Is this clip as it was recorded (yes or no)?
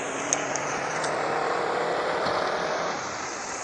yes